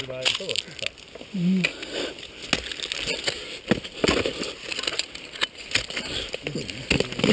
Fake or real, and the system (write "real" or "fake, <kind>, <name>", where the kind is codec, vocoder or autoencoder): real